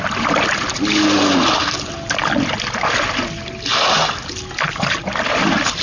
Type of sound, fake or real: real